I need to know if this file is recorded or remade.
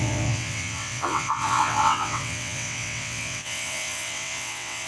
remade